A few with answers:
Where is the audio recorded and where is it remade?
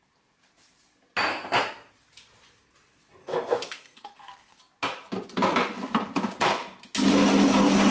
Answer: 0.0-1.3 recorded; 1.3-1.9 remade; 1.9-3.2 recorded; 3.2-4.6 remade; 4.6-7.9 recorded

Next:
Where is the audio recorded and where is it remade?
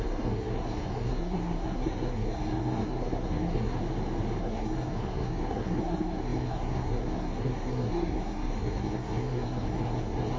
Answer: 0.0-3.8 remade; 3.8-4.4 recorded; 4.4-10.4 remade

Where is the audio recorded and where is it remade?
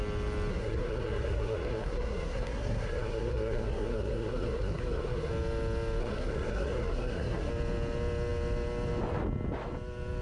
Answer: 0.0-0.5 recorded; 0.5-5.3 remade; 5.3-6.0 recorded; 6.0-7.5 remade; 7.5-10.2 recorded